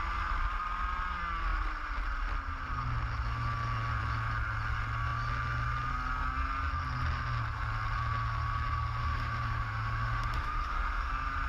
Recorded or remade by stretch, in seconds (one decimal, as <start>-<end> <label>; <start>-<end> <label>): 0.0-9.0 recorded; 9.0-11.1 remade; 11.1-11.5 recorded